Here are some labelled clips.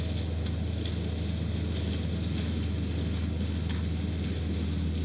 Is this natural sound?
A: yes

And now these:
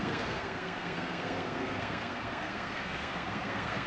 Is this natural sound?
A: no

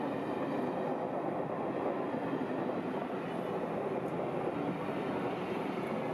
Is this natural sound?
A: yes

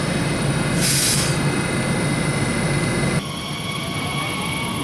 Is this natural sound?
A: yes